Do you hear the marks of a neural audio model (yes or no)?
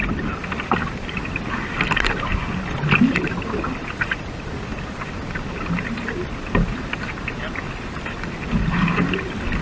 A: no